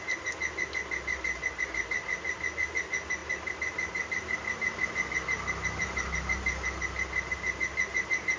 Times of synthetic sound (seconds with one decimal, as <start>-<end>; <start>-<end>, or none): none